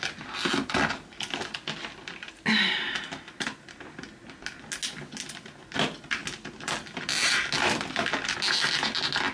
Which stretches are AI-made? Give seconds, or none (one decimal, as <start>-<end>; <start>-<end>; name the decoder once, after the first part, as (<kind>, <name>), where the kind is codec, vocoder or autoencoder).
none